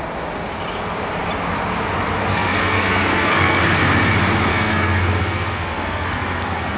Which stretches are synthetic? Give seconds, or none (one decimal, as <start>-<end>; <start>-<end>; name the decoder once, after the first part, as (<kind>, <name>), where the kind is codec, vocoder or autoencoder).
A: 2.3-3.6 (codec, SNAC); 4.5-6.8